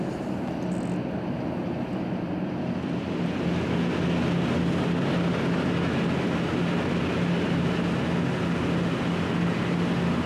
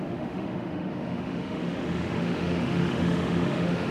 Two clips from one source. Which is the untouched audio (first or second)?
first